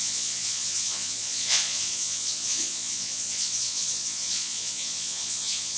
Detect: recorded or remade remade